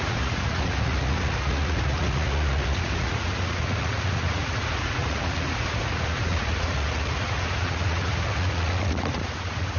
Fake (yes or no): yes